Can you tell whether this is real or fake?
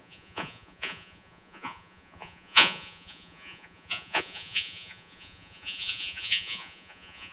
fake